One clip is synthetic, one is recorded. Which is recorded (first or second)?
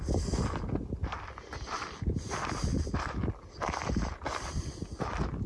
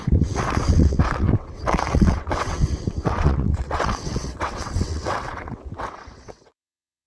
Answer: first